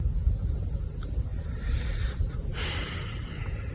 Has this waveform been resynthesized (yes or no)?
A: no